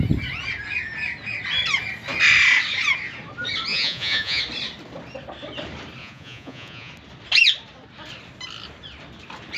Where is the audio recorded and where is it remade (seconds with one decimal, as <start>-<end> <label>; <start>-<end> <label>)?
0.0-3.7 recorded; 3.7-4.4 remade; 4.4-6.0 recorded; 6.0-6.9 remade; 6.9-9.6 recorded